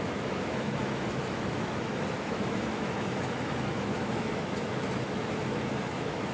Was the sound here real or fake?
fake